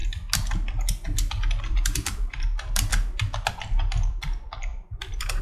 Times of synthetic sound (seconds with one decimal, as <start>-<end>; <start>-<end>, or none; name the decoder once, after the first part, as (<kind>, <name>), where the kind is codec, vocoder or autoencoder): 1.6-2.9 (vocoder, BigVGAN v2); 3.5-5.4